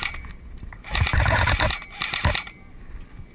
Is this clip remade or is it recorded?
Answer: recorded